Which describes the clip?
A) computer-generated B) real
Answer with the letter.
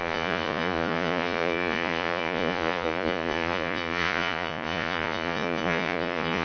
A